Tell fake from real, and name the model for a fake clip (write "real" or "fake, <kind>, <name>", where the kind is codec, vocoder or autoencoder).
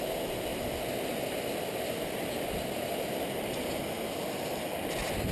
real